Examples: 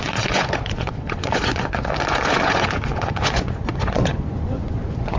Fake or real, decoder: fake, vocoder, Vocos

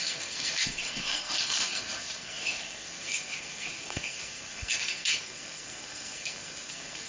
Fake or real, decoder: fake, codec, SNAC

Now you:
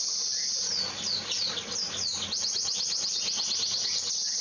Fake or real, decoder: real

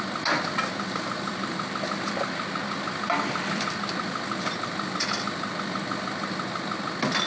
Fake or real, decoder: real